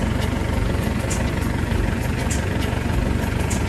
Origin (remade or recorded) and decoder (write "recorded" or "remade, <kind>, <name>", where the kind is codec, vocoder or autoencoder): remade, vocoder, Vocos